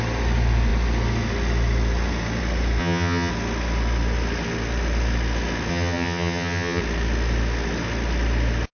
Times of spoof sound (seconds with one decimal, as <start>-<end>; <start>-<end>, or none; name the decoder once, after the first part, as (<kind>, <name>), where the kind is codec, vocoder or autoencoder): 2.8-3.3 (vocoder, HiFi-GAN); 5.7-6.8